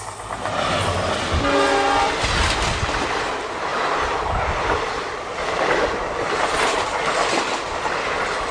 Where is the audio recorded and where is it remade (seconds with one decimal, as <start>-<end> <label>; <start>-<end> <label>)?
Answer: 0.0-8.5 recorded